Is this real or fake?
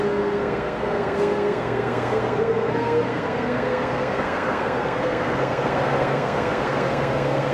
fake